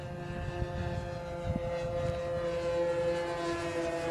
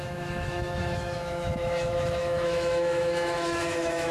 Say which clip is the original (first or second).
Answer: first